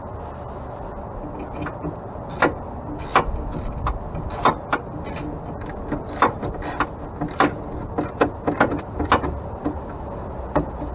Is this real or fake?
real